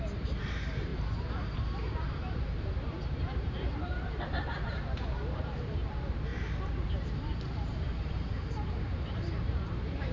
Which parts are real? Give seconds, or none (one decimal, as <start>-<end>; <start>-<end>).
6.3-7.0; 8.3-8.8